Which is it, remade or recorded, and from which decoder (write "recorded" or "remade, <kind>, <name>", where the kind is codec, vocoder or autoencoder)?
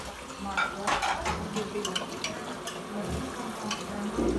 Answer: recorded